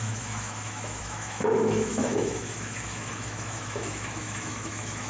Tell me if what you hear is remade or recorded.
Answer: remade